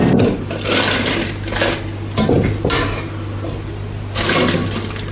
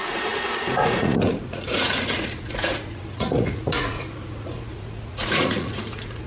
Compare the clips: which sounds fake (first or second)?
second